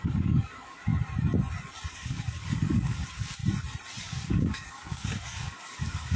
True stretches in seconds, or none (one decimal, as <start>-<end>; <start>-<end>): 0.9-1.9; 3.4-4.0